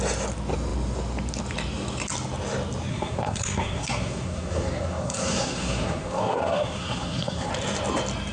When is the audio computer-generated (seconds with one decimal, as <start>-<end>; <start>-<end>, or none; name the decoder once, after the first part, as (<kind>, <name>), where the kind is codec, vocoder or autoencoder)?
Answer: 2.9-7.5 (codec, SNAC)